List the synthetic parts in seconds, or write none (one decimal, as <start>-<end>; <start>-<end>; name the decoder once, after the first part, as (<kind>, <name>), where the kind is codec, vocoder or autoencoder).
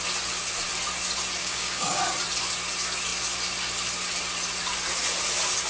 1.4-2.0 (codec, DAC)